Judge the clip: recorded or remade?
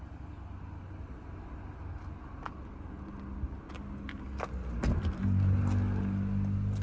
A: recorded